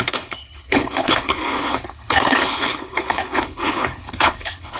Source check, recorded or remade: remade